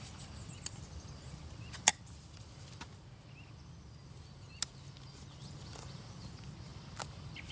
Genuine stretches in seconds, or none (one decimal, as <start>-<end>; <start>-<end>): 1.9-5.4; 6.7-7.5